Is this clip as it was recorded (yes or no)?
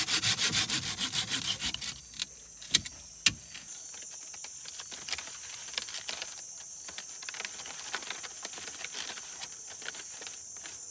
yes